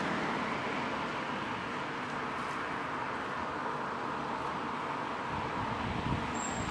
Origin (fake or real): real